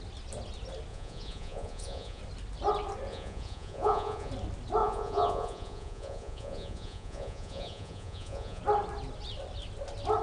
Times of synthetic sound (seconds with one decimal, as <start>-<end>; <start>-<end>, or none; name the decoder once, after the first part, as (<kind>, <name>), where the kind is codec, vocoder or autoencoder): 0.9-2.2 (vocoder, Vocos); 3.1-4.3; 4.8-8.6